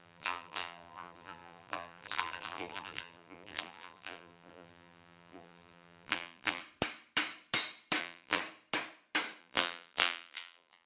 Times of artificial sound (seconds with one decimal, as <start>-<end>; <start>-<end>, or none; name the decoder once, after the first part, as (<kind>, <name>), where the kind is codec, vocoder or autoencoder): 0.0-6.6 (vocoder, BigVGAN v2); 8.0-8.4; 9.4-10.9